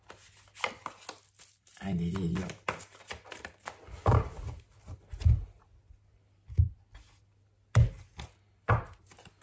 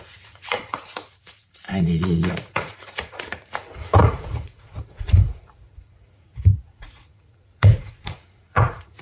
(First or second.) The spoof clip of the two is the second